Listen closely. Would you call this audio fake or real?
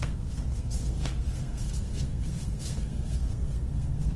fake